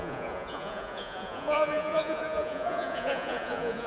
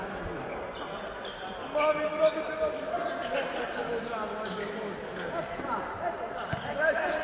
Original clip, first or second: second